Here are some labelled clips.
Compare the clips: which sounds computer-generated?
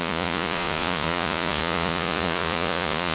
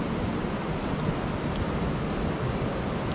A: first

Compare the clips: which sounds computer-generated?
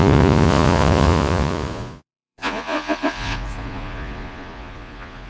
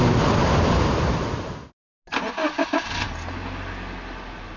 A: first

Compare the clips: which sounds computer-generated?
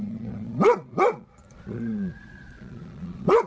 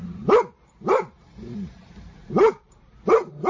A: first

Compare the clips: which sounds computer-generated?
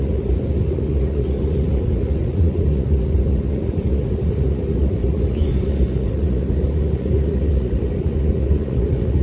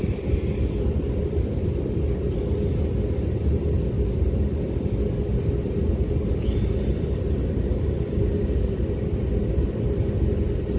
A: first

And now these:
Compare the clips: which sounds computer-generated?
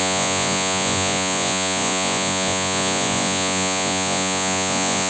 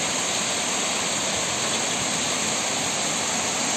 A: first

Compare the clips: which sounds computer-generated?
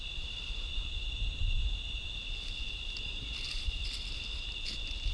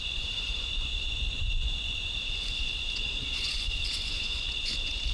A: second